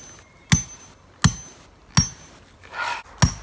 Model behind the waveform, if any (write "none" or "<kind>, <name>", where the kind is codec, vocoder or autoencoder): none